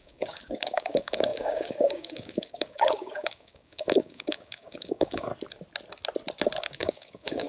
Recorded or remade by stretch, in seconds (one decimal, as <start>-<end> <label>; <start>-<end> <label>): 0.0-5.3 remade; 5.3-6.6 recorded; 6.6-7.5 remade